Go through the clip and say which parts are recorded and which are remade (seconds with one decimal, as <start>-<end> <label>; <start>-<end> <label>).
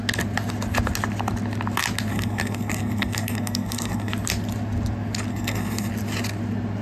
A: 0.0-2.1 recorded; 2.1-4.1 remade; 4.1-5.3 recorded; 5.3-5.9 remade; 5.9-6.8 recorded